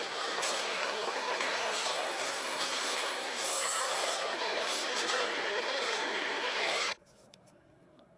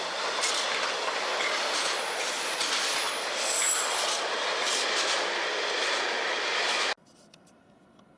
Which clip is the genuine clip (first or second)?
second